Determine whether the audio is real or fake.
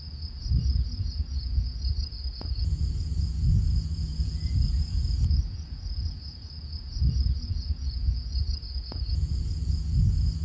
fake